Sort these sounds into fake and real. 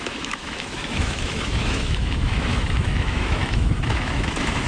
fake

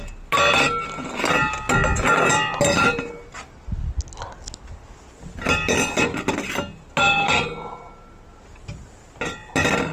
real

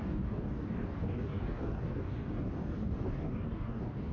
fake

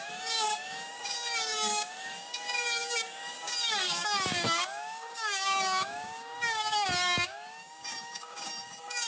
fake